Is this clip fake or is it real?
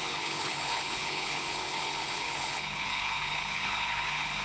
fake